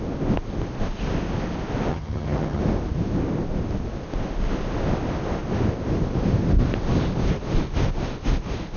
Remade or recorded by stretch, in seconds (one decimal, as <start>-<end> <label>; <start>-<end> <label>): 0.0-1.9 recorded; 1.9-2.6 remade; 2.6-8.8 recorded